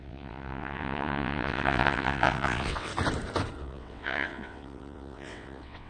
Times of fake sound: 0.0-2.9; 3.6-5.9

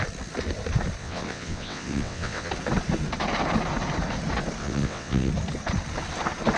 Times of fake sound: 1.0-2.5; 4.6-5.3

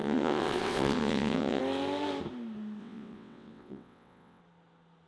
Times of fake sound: 0.0-1.6; 2.8-4.4

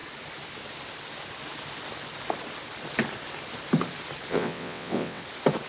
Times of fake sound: 4.3-5.2

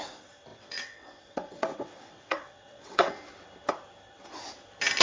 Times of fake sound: 0.5-3.1

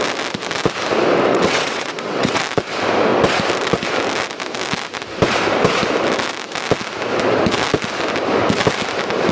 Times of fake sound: 1.3-2.4